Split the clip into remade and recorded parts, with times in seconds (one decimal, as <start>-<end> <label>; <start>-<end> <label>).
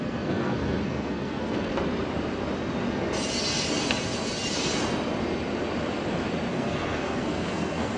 0.0-1.7 remade; 1.7-6.5 recorded; 6.5-8.0 remade